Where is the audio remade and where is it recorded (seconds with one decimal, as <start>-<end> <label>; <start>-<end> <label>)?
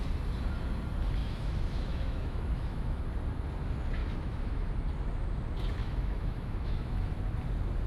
0.0-1.2 recorded; 1.2-3.0 remade; 3.0-4.0 recorded; 4.0-4.7 remade; 4.7-5.8 recorded; 5.8-7.1 remade; 7.1-7.9 recorded